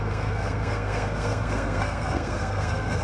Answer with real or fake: fake